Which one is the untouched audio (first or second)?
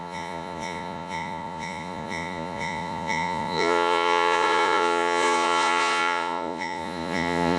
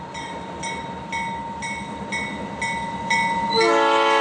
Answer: second